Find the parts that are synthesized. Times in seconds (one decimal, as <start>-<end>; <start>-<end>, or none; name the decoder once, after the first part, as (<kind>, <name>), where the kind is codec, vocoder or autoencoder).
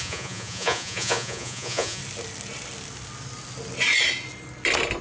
0.0-2.0 (vocoder, Vocos)